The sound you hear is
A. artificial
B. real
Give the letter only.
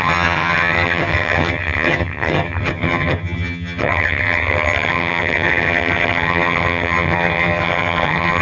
A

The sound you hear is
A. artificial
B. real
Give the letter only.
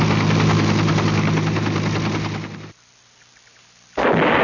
B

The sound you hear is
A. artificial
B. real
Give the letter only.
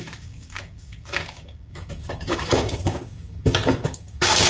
A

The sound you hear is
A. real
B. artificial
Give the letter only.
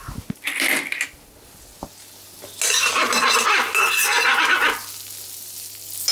A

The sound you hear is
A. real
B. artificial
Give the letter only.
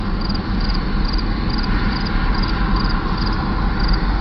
A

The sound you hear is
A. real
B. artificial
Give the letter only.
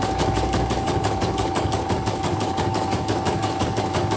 B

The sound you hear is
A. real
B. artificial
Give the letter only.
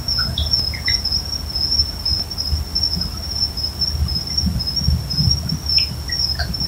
A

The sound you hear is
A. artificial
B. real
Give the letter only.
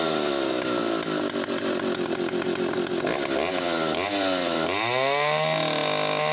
B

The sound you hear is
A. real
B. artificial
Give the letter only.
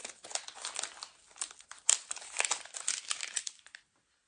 A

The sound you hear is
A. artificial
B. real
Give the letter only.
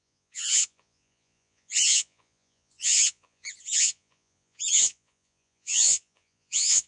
A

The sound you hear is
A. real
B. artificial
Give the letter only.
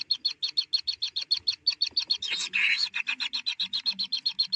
A